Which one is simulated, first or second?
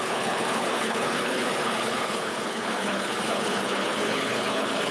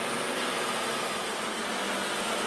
first